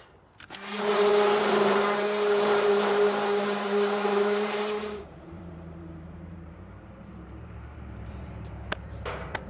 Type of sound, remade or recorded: remade